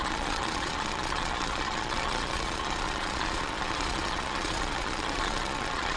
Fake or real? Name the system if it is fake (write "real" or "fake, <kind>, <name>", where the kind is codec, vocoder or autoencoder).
fake, vocoder, Vocos